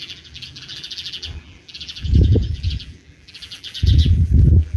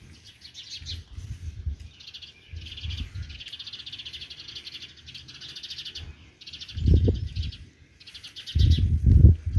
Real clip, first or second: second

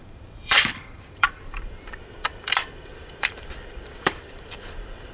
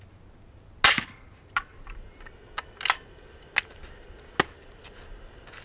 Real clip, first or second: second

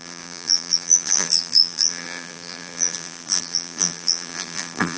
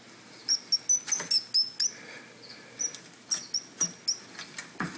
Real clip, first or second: second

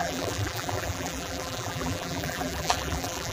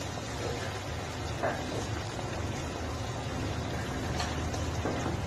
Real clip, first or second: second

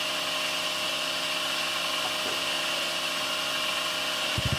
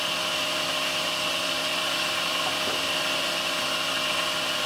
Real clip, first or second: first